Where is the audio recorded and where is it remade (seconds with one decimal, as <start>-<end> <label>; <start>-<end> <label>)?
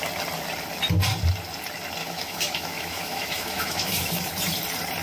0.0-2.0 recorded; 2.0-4.2 remade; 4.2-5.0 recorded